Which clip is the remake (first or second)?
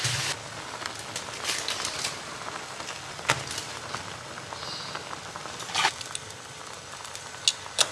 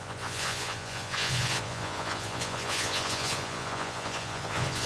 second